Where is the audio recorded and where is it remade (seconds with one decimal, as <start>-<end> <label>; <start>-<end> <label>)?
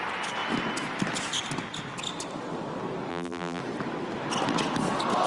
0.0-3.1 recorded; 3.1-3.6 remade; 3.6-5.3 recorded